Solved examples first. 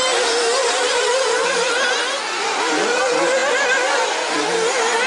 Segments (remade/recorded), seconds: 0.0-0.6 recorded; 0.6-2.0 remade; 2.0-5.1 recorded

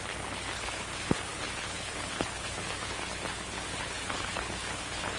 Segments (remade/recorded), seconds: 0.0-5.2 remade